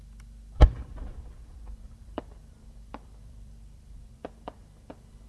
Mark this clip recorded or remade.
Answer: remade